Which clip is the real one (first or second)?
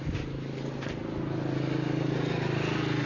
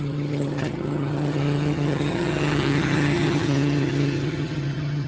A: first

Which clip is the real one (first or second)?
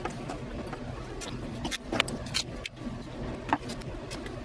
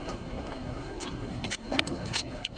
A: first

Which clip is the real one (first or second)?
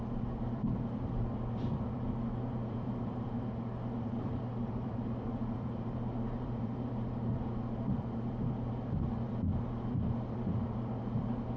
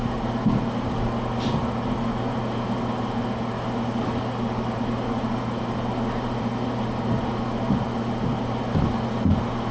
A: second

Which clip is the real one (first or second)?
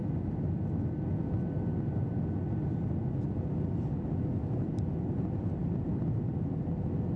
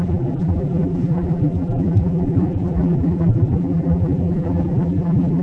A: first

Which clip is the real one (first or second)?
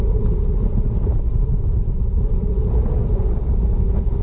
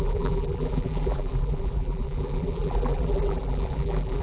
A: first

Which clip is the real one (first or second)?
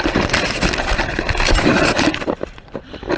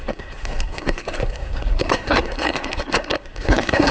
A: first